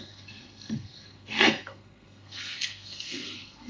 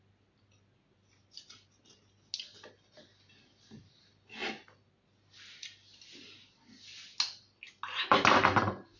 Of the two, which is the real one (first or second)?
second